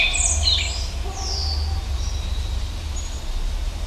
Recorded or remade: recorded